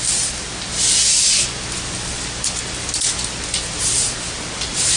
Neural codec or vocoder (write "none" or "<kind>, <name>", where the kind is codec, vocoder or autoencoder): none